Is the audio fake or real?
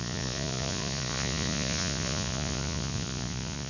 fake